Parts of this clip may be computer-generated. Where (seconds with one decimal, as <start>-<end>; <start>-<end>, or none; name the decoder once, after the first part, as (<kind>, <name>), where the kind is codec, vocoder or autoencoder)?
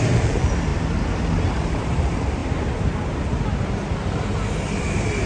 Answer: 0.0-0.7 (vocoder, BigVGAN v2); 1.6-2.4; 4.8-5.3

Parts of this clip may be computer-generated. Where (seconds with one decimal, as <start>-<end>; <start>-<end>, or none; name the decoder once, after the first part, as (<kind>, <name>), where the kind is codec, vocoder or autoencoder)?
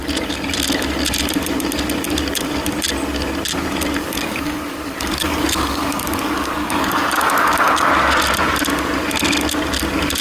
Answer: 4.0-7.9 (codec, DAC)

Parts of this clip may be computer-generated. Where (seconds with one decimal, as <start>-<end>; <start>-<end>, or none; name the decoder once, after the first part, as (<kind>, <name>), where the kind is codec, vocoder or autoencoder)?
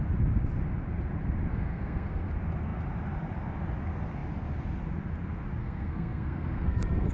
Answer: 1.5-2.3 (codec, SNAC); 5.6-7.1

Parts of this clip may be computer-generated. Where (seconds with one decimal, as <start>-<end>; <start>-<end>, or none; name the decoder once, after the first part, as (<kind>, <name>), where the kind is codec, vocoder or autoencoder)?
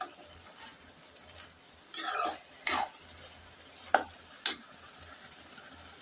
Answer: 0.7-4.3 (vocoder, BigVGAN v2)